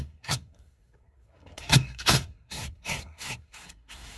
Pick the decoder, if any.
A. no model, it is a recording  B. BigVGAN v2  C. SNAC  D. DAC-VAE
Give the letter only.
C